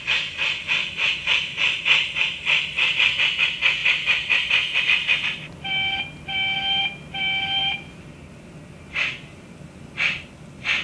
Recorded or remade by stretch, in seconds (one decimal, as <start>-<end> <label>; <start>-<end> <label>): 0.0-0.6 recorded; 0.6-3.3 remade; 3.3-3.8 recorded; 3.8-4.8 remade; 4.8-7.6 recorded; 7.6-8.3 remade; 8.3-10.8 recorded